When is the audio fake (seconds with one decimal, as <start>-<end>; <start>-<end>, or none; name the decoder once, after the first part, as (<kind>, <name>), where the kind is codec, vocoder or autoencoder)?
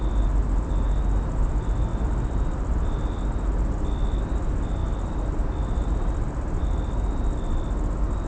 none